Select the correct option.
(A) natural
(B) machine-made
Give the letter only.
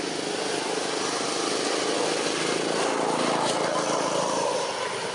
A